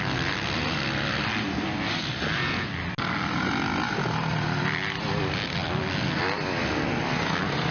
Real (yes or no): yes